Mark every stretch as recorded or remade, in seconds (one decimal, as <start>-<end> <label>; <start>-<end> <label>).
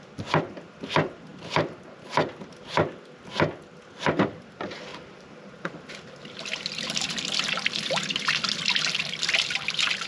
0.0-4.9 recorded; 4.9-7.1 remade; 7.1-10.1 recorded